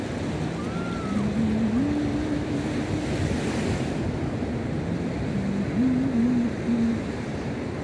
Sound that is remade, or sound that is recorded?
recorded